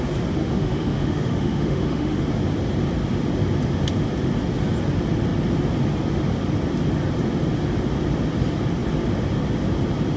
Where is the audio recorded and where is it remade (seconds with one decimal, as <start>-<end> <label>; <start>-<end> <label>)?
0.0-0.4 recorded; 0.4-2.2 remade; 2.2-10.2 recorded